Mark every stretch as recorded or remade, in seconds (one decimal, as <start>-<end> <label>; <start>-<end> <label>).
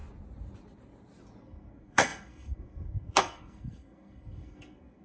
0.0-1.4 recorded; 1.4-5.0 remade